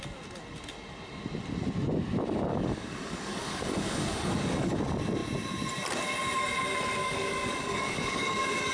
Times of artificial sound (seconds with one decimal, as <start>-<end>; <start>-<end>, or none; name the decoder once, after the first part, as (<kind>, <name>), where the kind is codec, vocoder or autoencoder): 2.5-4.8 (codec, DAC); 7.0-8.7